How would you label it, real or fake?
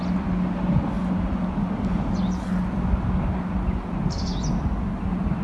real